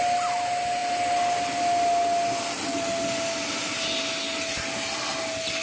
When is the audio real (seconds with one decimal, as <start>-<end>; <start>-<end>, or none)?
0.0-5.6